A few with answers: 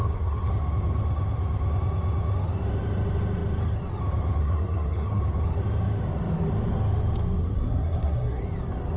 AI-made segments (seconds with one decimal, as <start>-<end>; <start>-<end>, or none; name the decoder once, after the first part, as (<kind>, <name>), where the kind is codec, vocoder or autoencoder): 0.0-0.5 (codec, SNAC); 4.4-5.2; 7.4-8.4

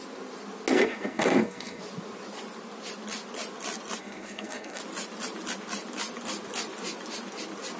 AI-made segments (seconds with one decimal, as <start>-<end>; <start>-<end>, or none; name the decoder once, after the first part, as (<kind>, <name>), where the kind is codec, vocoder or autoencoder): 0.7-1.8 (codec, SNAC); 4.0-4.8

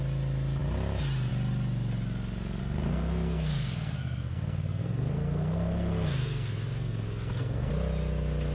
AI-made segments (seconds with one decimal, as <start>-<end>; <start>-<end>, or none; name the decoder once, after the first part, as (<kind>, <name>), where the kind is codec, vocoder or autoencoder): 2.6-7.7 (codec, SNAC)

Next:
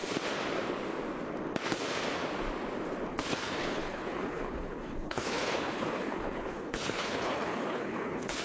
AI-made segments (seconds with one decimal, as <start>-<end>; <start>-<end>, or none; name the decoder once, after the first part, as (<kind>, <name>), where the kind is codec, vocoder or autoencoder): 3.1-8.4 (codec, HILCodec)